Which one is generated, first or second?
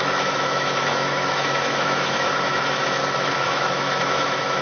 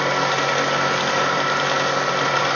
first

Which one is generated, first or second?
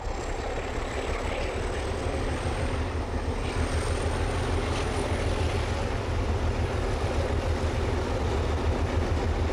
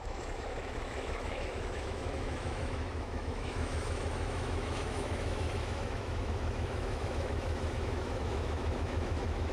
second